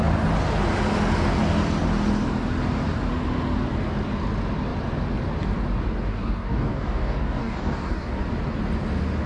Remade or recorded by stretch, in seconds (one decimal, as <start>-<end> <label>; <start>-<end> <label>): 0.0-6.1 recorded; 6.1-8.2 remade; 8.2-9.3 recorded

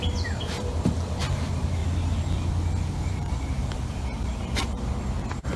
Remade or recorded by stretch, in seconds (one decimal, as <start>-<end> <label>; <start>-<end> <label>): 0.0-1.8 remade; 1.8-3.1 recorded; 3.1-5.6 remade